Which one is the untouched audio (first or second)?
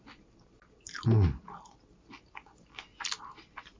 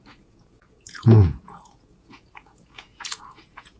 first